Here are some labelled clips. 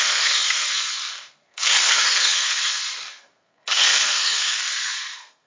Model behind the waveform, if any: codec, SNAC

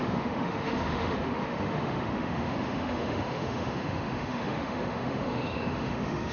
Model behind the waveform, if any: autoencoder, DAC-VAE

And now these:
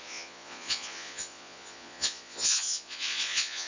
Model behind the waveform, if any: vocoder, Vocos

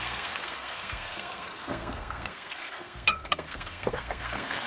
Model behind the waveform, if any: codec, SNAC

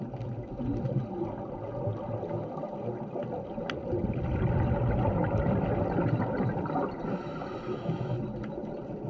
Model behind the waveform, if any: none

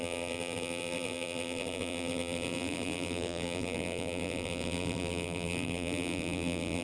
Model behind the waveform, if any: vocoder, BigVGAN v2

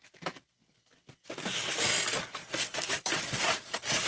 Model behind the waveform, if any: vocoder, BigVGAN v2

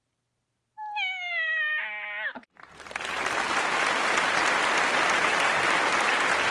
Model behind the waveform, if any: none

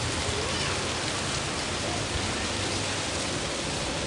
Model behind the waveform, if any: none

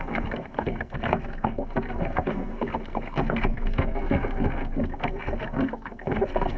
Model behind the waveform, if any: codec, SNAC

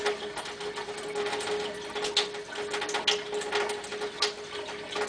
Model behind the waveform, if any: none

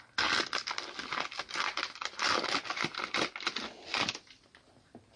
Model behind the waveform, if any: none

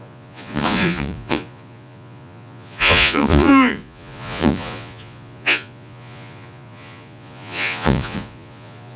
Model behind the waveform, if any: vocoder, Vocos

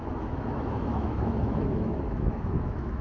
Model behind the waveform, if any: autoencoder, DAC-VAE